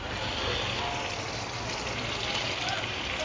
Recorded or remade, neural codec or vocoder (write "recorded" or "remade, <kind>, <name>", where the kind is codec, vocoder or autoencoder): recorded